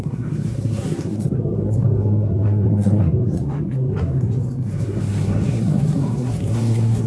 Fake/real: fake